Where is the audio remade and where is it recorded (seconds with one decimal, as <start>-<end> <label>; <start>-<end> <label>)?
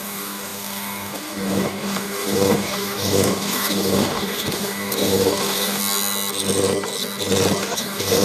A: 0.0-5.8 remade; 5.8-7.6 recorded; 7.6-8.2 remade